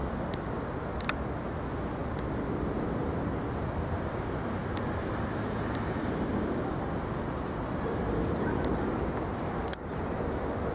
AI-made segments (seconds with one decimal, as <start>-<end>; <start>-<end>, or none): 0.0-0.9; 4.6-9.6